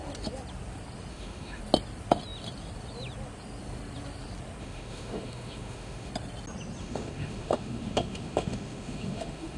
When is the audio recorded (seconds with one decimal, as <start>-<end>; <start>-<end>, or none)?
0.0-1.1; 1.6-4.6; 6.1-6.8